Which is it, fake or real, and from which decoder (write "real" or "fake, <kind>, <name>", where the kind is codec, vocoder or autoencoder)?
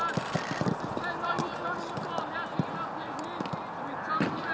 real